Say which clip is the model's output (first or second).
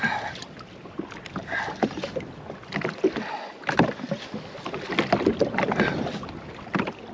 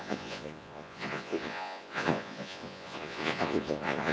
second